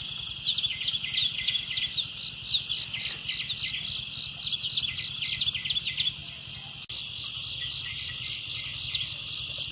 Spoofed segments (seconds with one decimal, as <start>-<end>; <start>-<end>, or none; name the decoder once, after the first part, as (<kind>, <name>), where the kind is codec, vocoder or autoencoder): none